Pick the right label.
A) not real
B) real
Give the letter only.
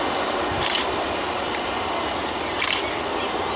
B